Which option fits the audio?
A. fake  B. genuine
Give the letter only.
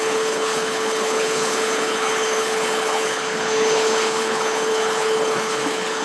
A